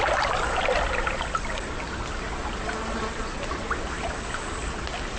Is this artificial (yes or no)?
no